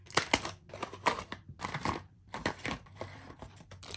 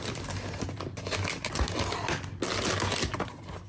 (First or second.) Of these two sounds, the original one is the second